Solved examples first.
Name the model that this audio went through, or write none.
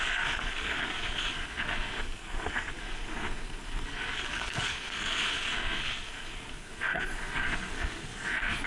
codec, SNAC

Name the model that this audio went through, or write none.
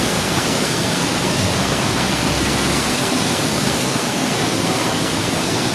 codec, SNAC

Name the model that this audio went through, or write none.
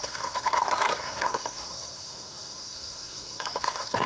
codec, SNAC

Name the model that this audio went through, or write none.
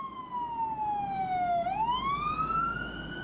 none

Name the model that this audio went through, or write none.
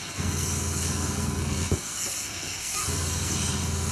codec, SNAC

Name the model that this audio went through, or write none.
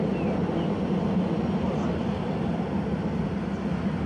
none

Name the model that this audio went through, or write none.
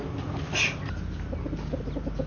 none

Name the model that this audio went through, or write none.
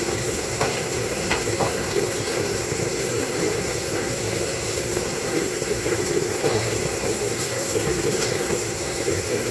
codec, SNAC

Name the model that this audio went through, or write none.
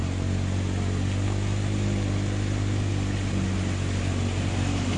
none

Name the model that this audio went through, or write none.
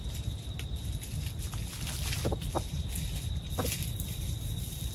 none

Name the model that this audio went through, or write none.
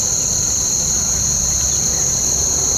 none